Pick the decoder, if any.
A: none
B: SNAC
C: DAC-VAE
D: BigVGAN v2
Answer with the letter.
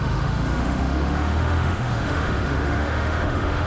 C